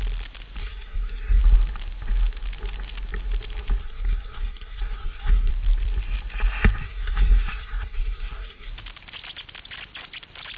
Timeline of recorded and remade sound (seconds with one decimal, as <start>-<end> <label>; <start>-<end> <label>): 0.0-0.6 recorded; 0.6-1.4 remade; 1.4-3.8 recorded; 3.8-5.5 remade; 5.5-6.8 recorded; 6.8-8.7 remade; 8.7-10.6 recorded